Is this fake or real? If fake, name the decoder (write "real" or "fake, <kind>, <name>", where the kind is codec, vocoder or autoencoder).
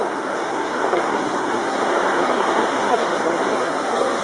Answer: fake, codec, SNAC